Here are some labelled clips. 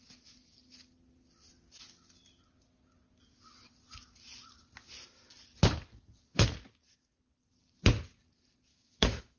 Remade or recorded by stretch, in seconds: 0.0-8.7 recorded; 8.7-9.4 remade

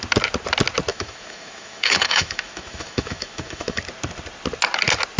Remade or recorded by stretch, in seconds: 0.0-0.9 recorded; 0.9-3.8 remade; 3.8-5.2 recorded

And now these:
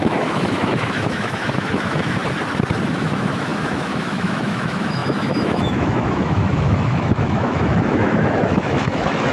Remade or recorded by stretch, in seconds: 0.0-2.2 remade; 2.2-2.9 recorded; 2.9-9.3 remade